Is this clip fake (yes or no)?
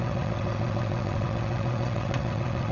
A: yes